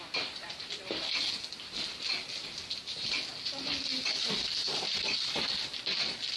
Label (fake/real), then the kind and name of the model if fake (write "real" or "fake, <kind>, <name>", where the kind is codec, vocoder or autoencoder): real